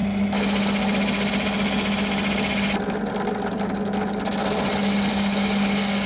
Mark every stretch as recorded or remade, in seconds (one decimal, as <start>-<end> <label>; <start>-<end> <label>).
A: 0.0-5.1 recorded; 5.1-6.1 remade